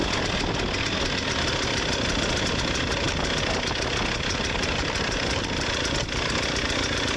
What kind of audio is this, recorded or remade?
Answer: recorded